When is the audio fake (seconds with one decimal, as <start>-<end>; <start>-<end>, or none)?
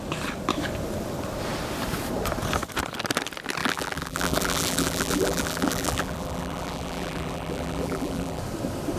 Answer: 3.6-8.4